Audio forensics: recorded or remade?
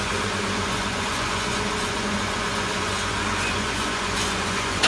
remade